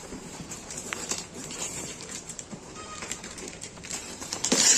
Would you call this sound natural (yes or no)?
no